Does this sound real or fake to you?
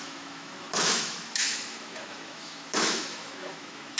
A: fake